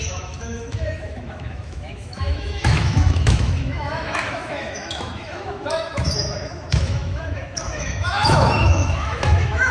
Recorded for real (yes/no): no